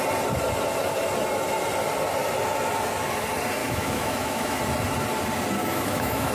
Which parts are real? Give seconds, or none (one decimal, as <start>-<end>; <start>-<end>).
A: 0.0-3.6; 4.6-5.6